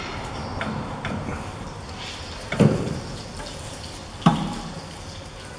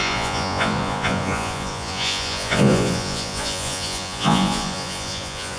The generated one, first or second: second